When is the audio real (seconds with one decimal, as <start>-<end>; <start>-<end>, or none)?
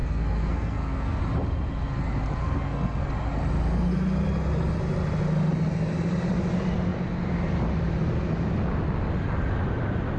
1.2-2.4; 3.1-10.2